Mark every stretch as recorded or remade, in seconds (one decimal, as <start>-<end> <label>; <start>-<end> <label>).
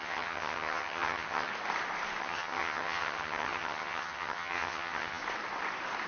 0.0-1.5 remade; 1.5-2.2 recorded; 2.2-5.2 remade; 5.2-6.1 recorded